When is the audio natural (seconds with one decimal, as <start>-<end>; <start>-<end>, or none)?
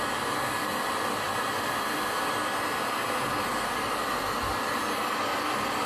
0.0-5.9